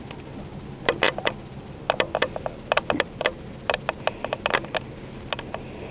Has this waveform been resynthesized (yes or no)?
no